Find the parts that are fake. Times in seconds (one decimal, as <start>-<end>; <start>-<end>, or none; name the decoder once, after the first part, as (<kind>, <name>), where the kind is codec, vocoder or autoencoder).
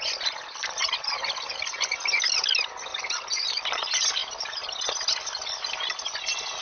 4.2-5.1 (vocoder, BigVGAN v2)